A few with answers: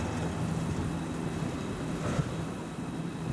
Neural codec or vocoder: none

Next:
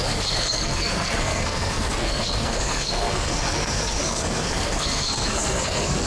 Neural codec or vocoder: codec, SNAC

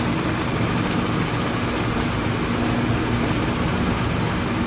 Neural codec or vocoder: none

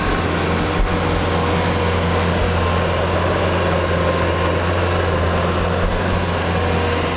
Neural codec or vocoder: none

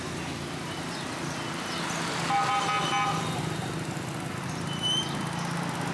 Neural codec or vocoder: none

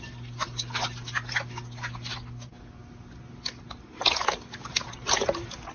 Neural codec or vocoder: none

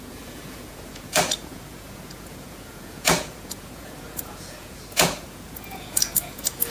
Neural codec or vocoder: vocoder, Vocos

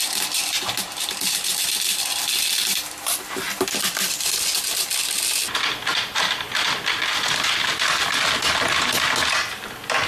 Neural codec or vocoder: none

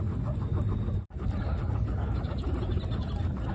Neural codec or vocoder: none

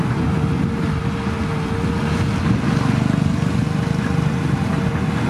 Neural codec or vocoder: none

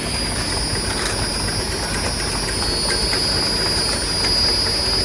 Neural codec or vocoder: none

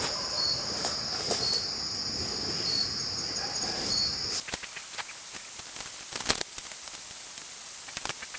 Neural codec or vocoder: none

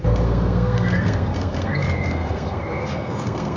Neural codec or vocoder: codec, SNAC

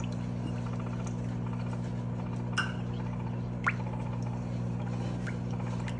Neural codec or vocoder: none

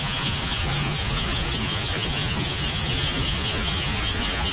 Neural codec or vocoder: vocoder, Vocos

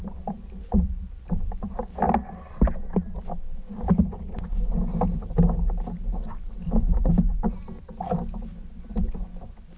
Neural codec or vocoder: none